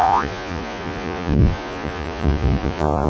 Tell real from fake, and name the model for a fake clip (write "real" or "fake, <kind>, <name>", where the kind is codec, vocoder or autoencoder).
fake, vocoder, Vocos